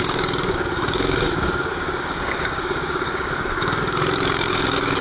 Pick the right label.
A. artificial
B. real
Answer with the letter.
A